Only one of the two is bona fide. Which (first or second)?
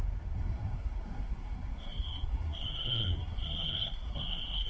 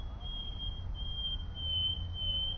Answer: second